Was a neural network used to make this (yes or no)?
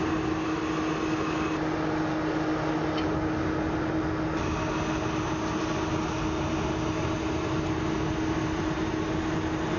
no